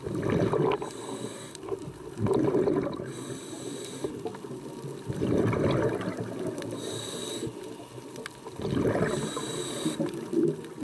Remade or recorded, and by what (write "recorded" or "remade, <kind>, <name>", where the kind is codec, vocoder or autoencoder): recorded